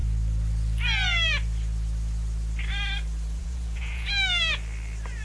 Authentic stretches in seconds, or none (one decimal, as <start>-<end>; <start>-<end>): 0.0-3.4; 4.1-5.2